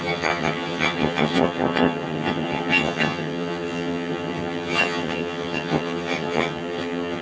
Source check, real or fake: fake